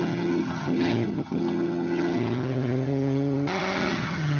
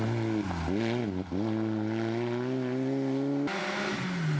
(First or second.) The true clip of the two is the second